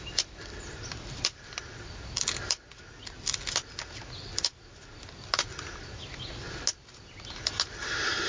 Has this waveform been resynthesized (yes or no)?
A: no